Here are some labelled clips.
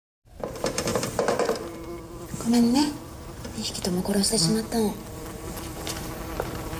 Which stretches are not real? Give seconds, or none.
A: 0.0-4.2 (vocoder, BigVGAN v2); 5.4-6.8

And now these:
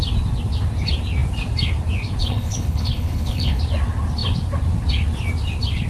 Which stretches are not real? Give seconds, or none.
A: 2.2-3.6 (codec, HILCodec)

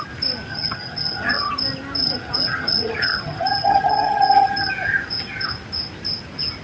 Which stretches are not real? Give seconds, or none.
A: 0.5-1.5 (vocoder, HiFi-GAN); 2.0-4.7

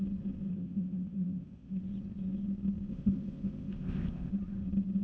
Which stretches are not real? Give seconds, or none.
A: 0.5-1.8 (codec, ZipCodec); 2.9-4.3

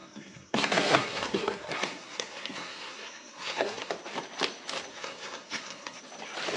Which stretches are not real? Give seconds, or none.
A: 0.0-3.9 (codec, SNAC); 4.9-6.0